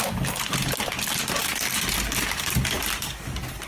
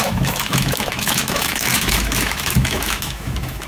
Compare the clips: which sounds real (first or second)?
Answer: first